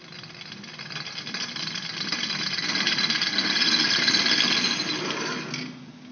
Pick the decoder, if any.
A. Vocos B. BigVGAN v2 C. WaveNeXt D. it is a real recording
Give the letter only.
D